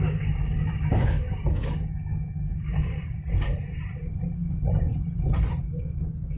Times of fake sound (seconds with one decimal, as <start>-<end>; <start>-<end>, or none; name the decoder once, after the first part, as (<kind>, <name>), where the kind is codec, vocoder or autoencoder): 0.0-3.2 (codec, DAC); 5.6-6.4